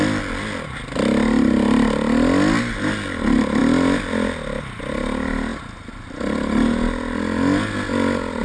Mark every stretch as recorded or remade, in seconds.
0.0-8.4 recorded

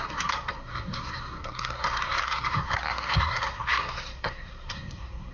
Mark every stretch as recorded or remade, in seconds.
0.0-5.3 remade

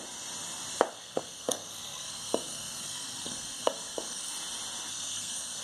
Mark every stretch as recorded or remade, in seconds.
0.0-0.9 recorded; 0.9-4.3 remade; 4.3-4.9 recorded; 4.9-5.6 remade

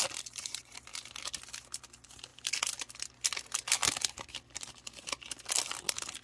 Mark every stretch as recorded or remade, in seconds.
0.0-6.2 recorded

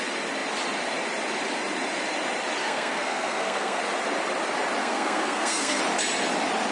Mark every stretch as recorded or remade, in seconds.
0.0-2.6 recorded; 2.6-3.8 remade; 3.8-4.8 recorded; 4.8-5.8 remade; 5.8-6.7 recorded

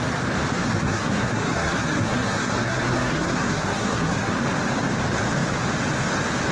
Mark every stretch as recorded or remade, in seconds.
0.0-0.5 recorded; 0.5-4.4 remade; 4.4-6.5 recorded

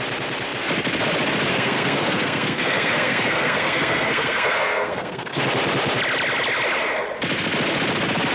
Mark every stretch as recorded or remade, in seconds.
0.0-1.5 recorded; 1.5-5.4 remade; 5.4-8.3 recorded